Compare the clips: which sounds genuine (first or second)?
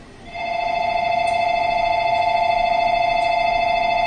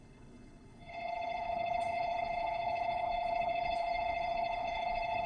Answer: first